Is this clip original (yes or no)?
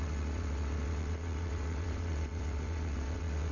no